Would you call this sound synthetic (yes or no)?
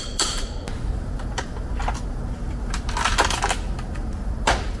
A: no